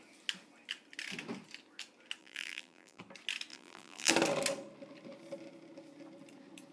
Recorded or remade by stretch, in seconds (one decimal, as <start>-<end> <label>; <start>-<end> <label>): 0.0-2.2 recorded; 2.2-3.0 remade; 3.0-3.5 recorded; 3.5-4.1 remade; 4.1-6.7 recorded